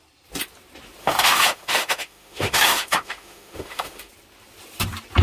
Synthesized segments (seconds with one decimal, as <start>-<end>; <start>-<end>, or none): 1.0-4.1